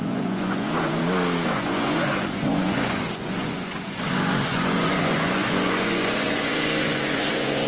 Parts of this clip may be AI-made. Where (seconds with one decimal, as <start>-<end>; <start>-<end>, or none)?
0.0-1.0; 1.5-7.7